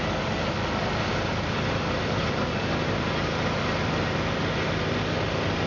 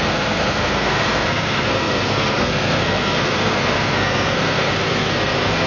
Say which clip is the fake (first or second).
second